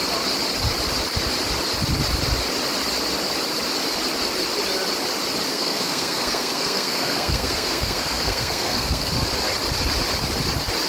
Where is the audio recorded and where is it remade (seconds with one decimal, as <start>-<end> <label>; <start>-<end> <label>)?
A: 0.0-5.5 recorded; 5.5-9.1 remade; 9.1-10.9 recorded